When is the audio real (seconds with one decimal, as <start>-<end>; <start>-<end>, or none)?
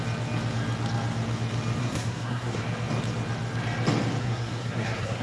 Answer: 0.0-1.8; 2.6-4.2